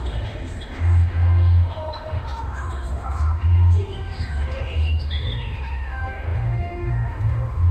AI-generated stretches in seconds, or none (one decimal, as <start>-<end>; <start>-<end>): 0.0-7.7